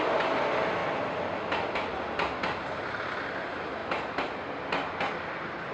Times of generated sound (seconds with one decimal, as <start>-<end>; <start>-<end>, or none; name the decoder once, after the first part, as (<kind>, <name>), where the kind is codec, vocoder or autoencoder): none